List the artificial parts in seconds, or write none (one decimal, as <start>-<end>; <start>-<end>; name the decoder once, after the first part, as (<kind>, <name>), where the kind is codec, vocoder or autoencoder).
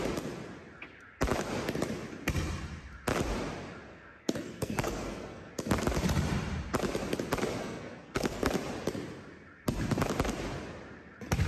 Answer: 3.9-5.5 (codec, SNAC); 7.6-8.5